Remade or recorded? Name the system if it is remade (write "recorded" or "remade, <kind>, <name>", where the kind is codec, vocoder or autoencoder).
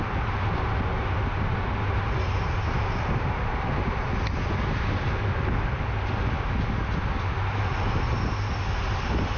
recorded